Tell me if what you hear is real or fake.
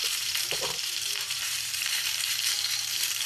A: fake